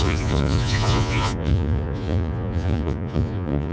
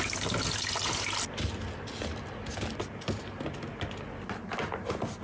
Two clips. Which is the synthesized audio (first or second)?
first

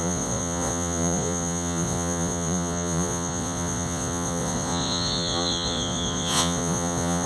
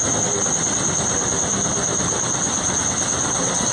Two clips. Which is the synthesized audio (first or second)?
first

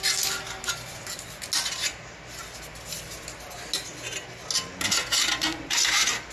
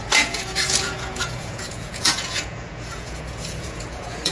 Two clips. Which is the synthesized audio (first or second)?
second